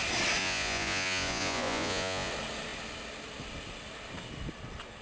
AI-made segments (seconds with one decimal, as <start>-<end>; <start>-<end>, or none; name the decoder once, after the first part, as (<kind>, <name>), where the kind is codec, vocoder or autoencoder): 0.4-2.3 (vocoder, Vocos)